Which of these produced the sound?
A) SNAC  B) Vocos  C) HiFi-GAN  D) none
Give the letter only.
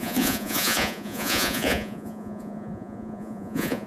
B